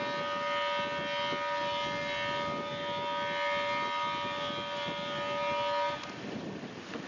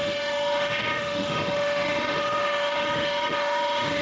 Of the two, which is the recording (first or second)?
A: first